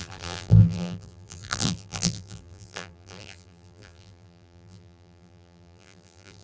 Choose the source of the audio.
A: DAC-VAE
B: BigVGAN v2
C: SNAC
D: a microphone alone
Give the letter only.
B